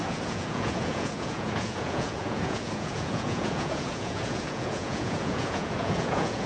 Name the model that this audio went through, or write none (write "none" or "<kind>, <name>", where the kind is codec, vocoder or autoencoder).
vocoder, Vocos